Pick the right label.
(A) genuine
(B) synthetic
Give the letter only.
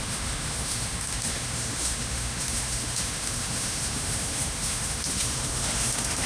B